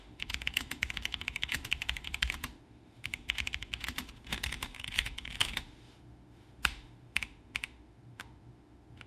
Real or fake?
fake